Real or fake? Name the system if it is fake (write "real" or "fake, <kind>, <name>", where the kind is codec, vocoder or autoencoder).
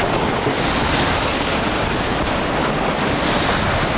real